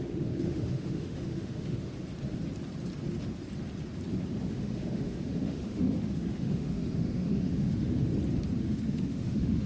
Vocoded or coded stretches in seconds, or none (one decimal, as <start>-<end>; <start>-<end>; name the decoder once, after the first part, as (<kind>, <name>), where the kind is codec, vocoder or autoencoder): 0.0-1.9 (autoencoder, DAC-VAE); 4.4-8.1; 8.6-9.7